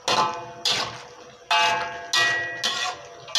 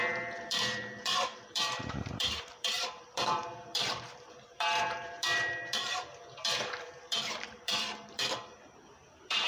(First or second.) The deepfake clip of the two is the second